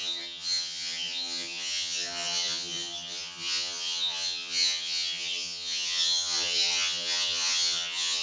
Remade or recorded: remade